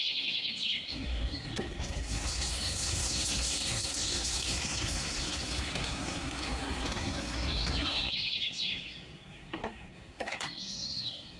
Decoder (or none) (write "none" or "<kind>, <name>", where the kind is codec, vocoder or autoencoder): codec, SNAC